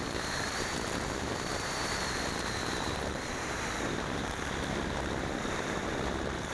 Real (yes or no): no